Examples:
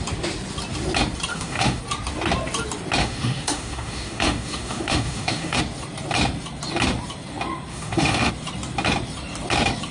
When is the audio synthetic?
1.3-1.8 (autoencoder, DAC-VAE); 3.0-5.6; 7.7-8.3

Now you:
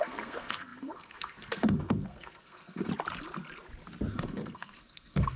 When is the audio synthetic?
0.0-2.9 (codec, SNAC); 4.1-5.4

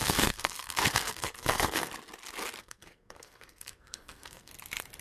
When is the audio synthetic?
0.0-1.9 (codec, SNAC); 2.6-4.5

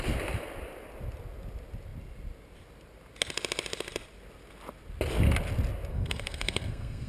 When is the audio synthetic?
5.9-7.1 (codec, SNAC)

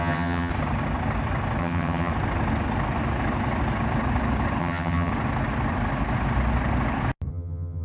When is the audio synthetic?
0.0-0.5 (vocoder, HiFi-GAN); 1.6-2.1; 4.6-5.1; 7.3-7.8

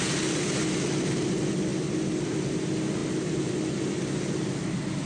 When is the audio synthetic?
none

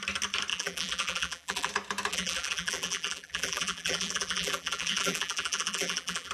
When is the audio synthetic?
0.5-1.7 (vocoder, BigVGAN v2); 2.1-6.3

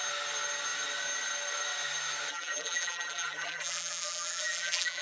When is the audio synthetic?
2.3-5.0 (vocoder, BigVGAN v2)